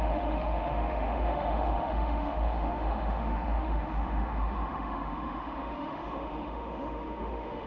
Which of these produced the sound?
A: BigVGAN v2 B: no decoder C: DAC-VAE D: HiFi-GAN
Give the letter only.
C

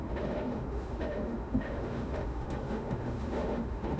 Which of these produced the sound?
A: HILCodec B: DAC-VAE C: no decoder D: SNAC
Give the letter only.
B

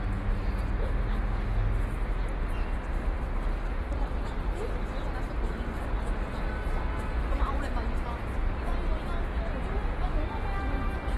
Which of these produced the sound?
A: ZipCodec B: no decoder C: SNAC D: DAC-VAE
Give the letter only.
B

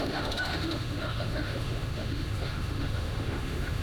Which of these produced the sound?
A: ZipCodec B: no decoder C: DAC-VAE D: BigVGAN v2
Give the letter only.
C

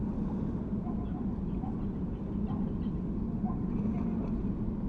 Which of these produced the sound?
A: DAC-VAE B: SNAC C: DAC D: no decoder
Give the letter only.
D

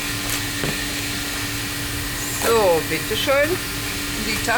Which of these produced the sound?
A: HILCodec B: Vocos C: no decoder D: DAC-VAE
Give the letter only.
C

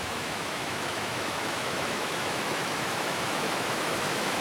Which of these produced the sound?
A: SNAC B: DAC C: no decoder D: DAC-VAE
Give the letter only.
D